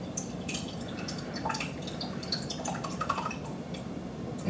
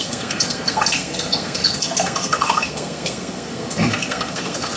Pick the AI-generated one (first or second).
second